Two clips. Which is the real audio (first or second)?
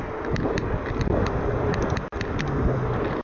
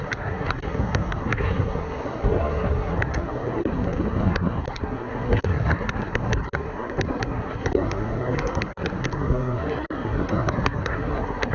first